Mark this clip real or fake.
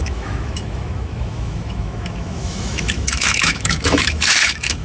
fake